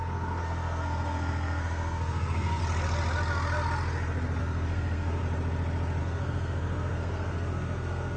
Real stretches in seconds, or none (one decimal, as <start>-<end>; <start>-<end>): 2.6-4.4; 5.2-6.0